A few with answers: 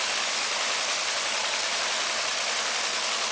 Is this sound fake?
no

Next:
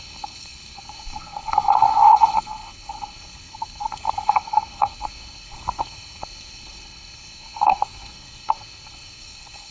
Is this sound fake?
yes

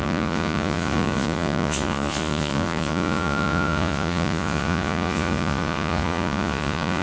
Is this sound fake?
yes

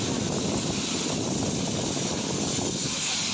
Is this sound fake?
no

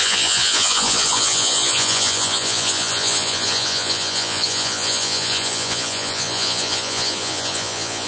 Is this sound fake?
yes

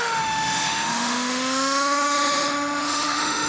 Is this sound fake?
yes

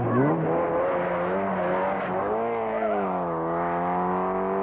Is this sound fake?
no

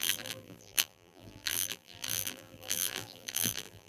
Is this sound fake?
yes